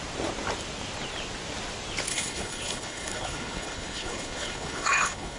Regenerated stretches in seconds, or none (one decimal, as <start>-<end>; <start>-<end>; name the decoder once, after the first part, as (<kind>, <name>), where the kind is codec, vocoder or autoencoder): 2.1-5.4 (codec, HILCodec)